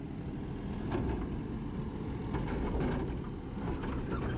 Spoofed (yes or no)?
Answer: no